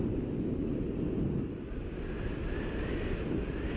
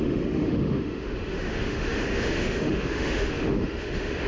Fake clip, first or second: second